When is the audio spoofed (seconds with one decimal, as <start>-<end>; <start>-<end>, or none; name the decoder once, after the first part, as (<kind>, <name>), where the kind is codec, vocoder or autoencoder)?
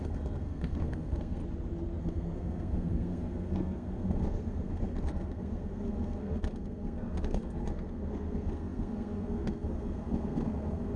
0.0-1.4 (codec, SNAC); 2.0-11.0